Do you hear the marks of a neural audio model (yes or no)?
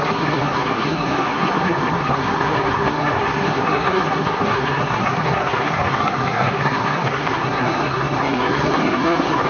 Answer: yes